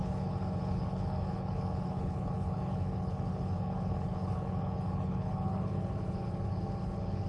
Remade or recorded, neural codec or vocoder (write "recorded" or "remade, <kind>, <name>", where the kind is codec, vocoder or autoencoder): remade, codec, HILCodec